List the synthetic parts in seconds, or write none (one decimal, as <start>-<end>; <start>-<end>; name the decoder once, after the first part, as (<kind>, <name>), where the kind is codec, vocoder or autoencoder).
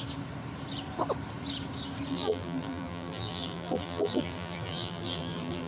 2.1-5.7 (vocoder, BigVGAN v2)